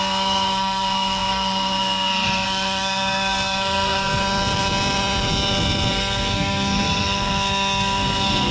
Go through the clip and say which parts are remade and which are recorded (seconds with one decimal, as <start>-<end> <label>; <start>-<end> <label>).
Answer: 0.0-4.2 remade; 4.2-5.9 recorded; 5.9-8.5 remade